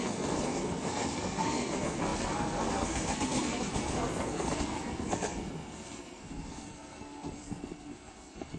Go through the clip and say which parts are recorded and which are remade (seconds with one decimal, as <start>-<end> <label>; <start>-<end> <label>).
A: 0.0-8.6 remade